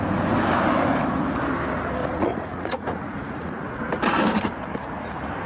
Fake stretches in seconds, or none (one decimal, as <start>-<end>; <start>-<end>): 2.0-3.9